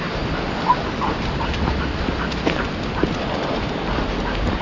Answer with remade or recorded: recorded